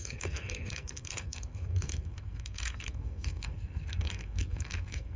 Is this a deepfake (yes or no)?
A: yes